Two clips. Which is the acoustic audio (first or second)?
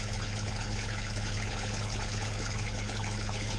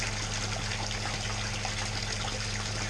second